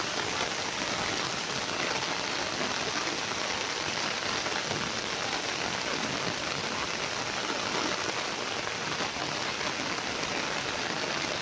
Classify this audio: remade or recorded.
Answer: recorded